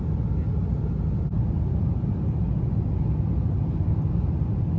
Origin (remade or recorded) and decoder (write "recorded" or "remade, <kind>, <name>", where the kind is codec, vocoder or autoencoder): recorded